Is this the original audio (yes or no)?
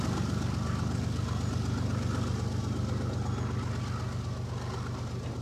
yes